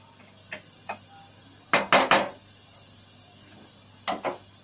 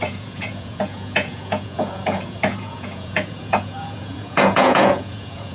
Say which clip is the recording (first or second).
first